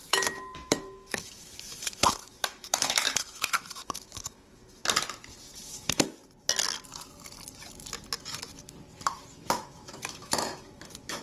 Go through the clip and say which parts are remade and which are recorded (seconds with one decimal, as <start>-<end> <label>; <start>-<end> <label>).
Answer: 0.0-4.8 remade; 4.8-5.6 recorded; 5.6-6.2 remade; 6.2-9.3 recorded; 9.3-11.2 remade